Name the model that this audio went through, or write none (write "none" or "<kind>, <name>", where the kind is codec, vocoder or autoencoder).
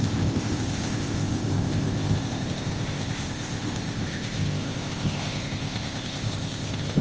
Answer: codec, ZipCodec